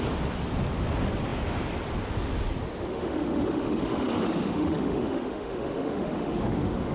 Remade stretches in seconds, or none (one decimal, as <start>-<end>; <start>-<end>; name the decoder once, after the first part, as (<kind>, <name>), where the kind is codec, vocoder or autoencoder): 2.9-6.9 (autoencoder, DAC-VAE)